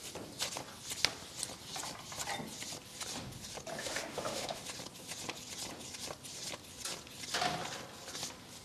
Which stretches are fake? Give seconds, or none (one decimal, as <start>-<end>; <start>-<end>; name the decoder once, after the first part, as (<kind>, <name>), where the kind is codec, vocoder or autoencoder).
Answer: 3.8-4.6 (autoencoder, DAC-VAE)